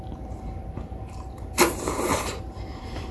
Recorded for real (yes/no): no